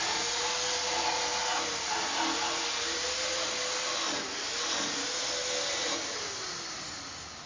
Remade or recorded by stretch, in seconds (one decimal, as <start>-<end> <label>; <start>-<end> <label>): 0.0-7.5 recorded